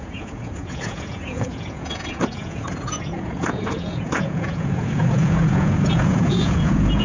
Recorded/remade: remade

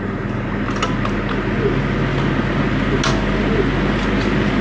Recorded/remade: recorded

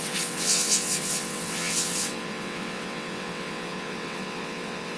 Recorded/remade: remade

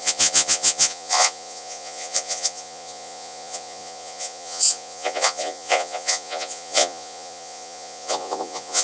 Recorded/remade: remade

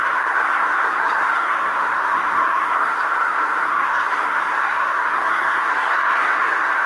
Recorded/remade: remade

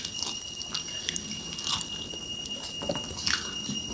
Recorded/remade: recorded